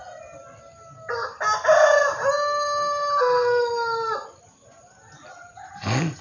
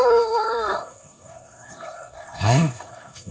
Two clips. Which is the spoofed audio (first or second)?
second